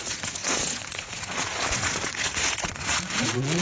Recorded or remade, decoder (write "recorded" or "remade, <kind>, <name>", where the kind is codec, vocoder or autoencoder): remade, vocoder, Vocos